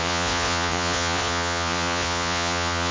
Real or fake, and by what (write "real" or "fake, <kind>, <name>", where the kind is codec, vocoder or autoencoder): fake, vocoder, Vocos